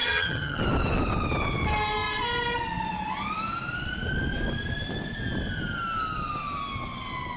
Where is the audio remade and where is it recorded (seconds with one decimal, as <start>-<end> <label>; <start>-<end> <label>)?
0.0-0.6 remade; 0.6-7.4 recorded